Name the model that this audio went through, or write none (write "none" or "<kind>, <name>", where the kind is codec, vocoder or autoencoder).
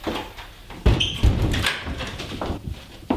vocoder, BigVGAN v2